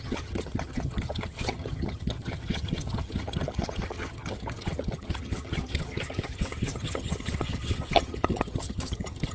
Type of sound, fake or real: fake